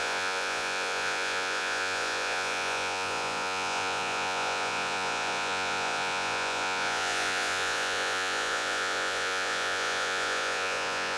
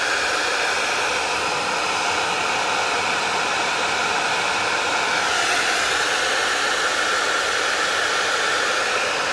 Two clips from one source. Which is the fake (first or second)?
first